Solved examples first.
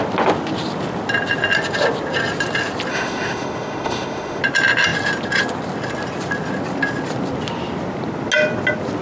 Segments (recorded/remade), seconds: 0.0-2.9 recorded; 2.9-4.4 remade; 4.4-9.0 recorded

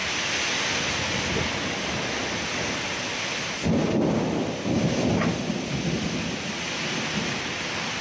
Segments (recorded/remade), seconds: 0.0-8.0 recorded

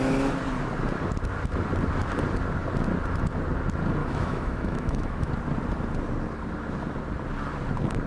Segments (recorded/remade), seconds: 0.0-4.0 recorded; 4.0-5.3 remade; 5.3-8.1 recorded

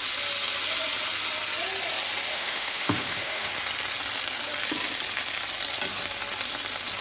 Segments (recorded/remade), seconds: 0.0-2.3 recorded; 2.3-3.5 remade; 3.5-7.0 recorded

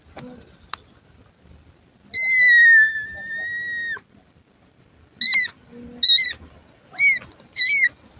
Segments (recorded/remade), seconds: 0.0-8.2 recorded

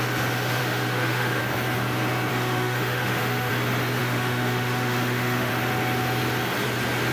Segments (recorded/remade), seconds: 0.0-0.6 recorded; 0.6-1.4 remade; 1.4-2.3 recorded; 2.3-3.5 remade; 3.5-4.0 recorded; 4.0-5.5 remade; 5.5-7.1 recorded

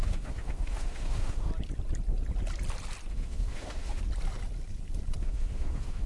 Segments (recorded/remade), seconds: 0.0-1.5 remade; 1.5-3.1 recorded; 3.1-4.0 remade; 4.0-5.2 recorded; 5.2-6.1 remade

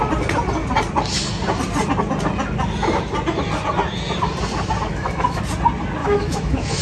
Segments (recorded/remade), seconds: 0.0-4.9 recorded; 4.9-5.4 remade; 5.4-6.0 recorded; 6.0-6.8 remade